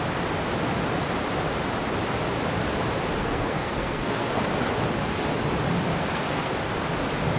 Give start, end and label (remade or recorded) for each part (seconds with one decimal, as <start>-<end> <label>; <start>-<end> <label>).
0.0-3.2 recorded; 3.2-4.4 remade; 4.4-5.9 recorded; 5.9-6.5 remade; 6.5-7.4 recorded